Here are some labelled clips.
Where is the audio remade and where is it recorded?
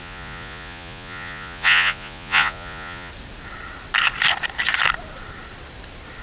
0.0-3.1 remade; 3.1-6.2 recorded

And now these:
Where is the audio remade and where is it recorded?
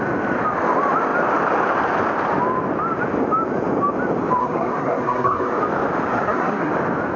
0.0-4.4 recorded; 4.4-5.6 remade; 5.6-6.1 recorded; 6.1-6.7 remade; 6.7-7.2 recorded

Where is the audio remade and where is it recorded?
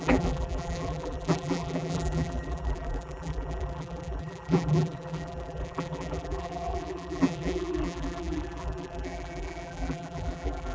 0.0-10.7 remade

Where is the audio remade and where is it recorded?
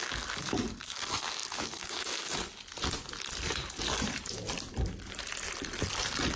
0.0-2.4 remade; 2.4-6.4 recorded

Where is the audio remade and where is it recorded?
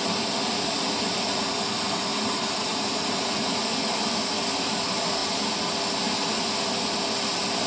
0.0-0.4 recorded; 0.4-1.6 remade; 1.6-2.1 recorded; 2.1-4.0 remade; 4.0-7.7 recorded